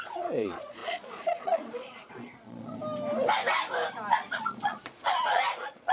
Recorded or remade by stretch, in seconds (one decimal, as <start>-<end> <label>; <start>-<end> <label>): 0.0-2.8 remade; 2.8-4.1 recorded; 4.1-5.9 remade